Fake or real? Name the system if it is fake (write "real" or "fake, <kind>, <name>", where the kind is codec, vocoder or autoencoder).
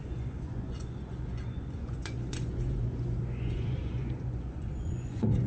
fake, vocoder, Vocos